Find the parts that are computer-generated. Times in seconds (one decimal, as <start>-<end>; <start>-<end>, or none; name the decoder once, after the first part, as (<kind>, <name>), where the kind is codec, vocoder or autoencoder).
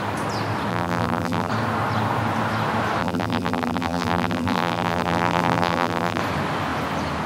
0.7-1.5 (vocoder, BigVGAN v2); 3.0-6.2